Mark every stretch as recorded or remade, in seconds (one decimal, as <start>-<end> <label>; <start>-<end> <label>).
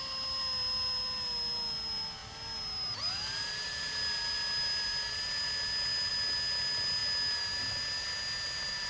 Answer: 0.0-8.9 recorded